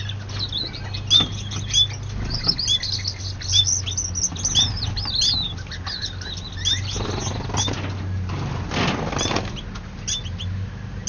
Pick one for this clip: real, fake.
real